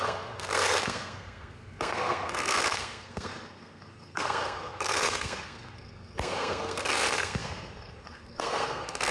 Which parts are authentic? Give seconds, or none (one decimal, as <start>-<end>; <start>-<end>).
none